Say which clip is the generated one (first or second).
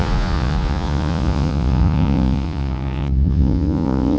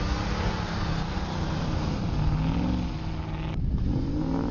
first